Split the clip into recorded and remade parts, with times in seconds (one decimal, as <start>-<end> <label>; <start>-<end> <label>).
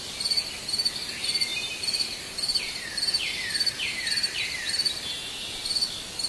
0.0-1.5 recorded; 1.5-5.3 remade; 5.3-6.3 recorded